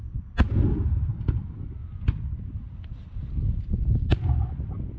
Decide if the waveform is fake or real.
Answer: real